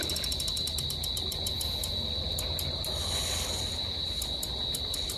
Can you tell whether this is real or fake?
real